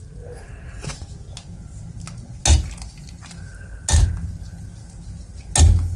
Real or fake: real